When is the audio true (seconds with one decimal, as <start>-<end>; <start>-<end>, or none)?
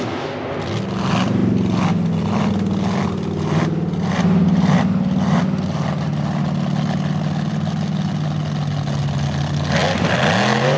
0.0-10.8